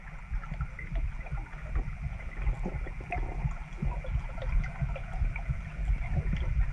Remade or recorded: recorded